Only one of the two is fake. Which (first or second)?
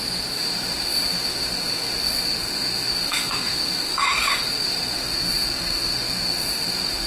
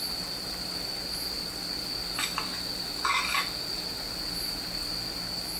first